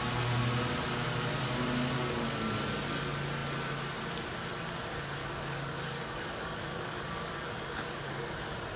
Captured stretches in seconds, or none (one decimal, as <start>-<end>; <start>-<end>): 0.0-5.2; 8.3-8.8